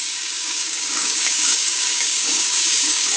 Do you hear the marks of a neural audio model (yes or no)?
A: yes